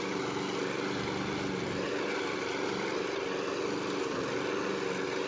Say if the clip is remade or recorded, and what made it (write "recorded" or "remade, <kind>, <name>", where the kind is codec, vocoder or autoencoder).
recorded